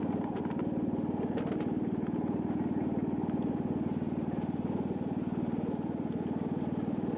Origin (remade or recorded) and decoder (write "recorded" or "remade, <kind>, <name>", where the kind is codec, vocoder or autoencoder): recorded